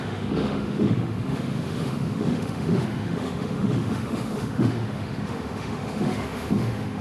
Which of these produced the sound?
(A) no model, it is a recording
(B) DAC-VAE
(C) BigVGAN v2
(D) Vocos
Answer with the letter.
B